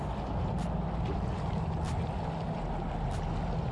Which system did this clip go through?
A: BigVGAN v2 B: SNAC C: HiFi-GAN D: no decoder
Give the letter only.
D